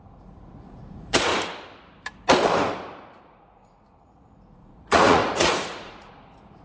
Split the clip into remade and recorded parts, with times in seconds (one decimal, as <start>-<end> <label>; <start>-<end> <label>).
0.0-1.3 remade; 1.3-3.2 recorded; 3.2-6.6 remade